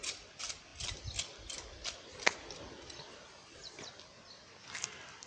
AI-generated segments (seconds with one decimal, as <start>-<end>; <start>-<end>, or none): 3.6-5.3